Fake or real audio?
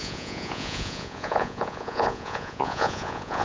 fake